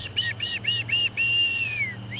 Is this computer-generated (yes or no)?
no